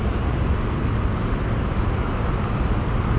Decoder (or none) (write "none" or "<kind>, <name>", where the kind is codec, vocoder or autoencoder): none